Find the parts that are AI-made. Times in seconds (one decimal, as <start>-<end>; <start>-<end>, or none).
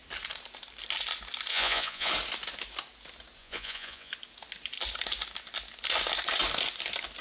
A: 1.5-2.1; 3.4-4.1